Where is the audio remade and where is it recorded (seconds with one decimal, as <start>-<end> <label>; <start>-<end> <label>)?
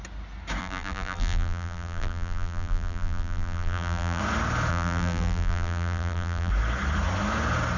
0.0-0.6 recorded; 0.6-4.2 remade; 4.2-4.7 recorded; 4.7-6.5 remade; 6.5-7.8 recorded